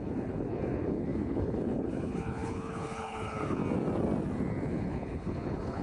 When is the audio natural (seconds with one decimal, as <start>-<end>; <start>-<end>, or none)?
3.6-4.7